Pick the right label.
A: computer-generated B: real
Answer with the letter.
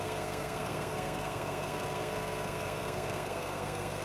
A